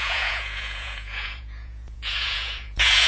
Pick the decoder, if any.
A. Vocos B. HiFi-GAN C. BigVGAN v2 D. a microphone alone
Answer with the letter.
A